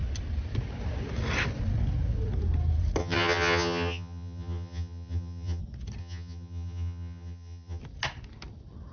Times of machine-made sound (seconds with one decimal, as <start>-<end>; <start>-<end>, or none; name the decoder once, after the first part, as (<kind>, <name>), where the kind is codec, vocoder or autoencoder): 3.0-5.6 (vocoder, HiFi-GAN); 6.0-7.8